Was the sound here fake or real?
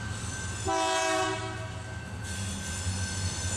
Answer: real